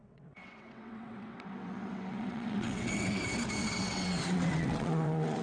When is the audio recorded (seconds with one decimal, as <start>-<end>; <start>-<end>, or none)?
3.2-3.6